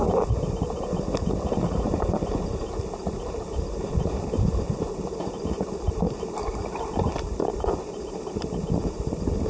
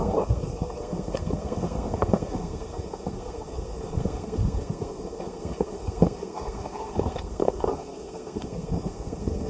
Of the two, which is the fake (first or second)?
second